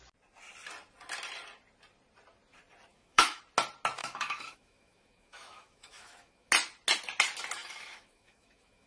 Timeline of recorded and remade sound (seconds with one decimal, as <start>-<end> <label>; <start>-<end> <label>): 0.0-2.9 recorded; 2.9-3.4 remade; 3.4-4.0 recorded; 4.0-6.5 remade; 6.5-7.6 recorded; 7.6-8.9 remade